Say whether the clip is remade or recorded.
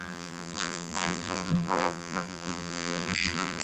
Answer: remade